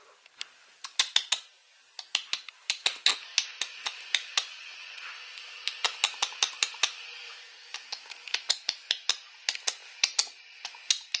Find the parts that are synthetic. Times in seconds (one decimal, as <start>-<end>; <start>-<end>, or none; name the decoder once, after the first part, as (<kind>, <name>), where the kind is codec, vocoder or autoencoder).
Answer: 4.5-5.1 (vocoder, Vocos)